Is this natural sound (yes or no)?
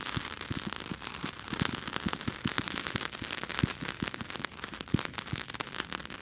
yes